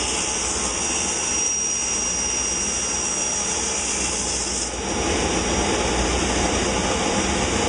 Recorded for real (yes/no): yes